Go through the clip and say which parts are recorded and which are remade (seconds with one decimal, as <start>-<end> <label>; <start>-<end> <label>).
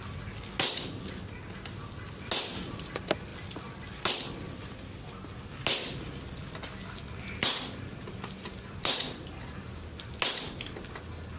0.0-11.4 recorded